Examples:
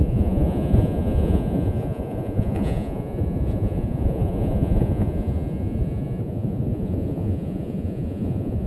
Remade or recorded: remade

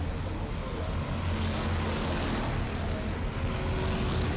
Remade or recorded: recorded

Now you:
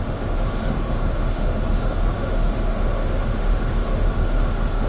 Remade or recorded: remade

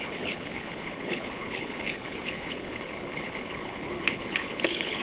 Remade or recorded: remade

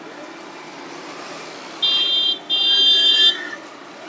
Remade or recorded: recorded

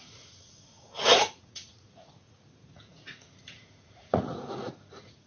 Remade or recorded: remade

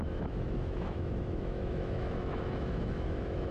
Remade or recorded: remade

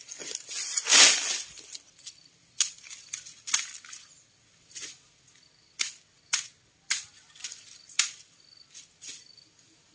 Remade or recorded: recorded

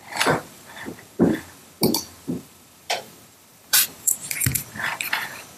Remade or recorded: remade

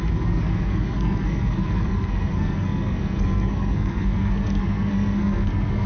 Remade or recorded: remade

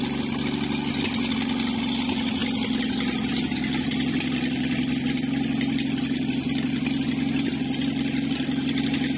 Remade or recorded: recorded